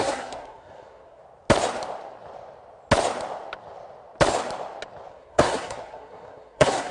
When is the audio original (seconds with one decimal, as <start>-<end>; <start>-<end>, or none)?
1.2-5.1